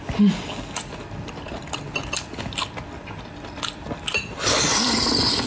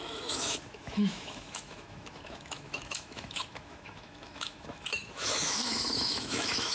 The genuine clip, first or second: first